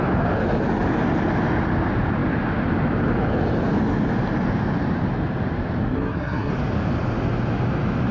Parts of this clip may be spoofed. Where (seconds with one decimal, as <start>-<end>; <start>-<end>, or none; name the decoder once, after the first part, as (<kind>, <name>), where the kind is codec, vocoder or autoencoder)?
5.8-6.5 (codec, SNAC)